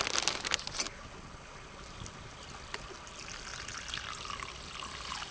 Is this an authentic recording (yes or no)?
yes